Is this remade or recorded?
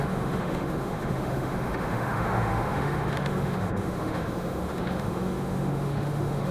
remade